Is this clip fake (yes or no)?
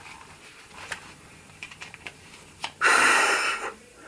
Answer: yes